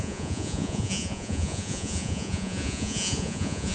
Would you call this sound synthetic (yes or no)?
yes